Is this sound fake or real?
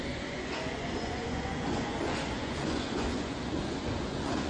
fake